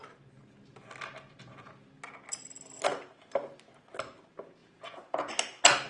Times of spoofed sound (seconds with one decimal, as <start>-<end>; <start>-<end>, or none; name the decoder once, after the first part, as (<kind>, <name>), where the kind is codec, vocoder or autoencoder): 4.6-5.3 (vocoder, Vocos)